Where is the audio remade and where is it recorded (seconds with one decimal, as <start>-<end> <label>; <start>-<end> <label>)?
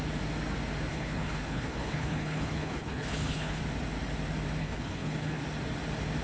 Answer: 0.0-0.9 recorded; 0.9-3.6 remade; 3.6-4.6 recorded; 4.6-5.4 remade; 5.4-6.2 recorded